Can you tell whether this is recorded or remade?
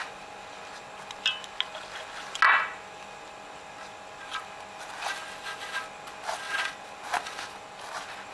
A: recorded